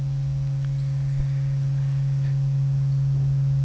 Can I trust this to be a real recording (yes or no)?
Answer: yes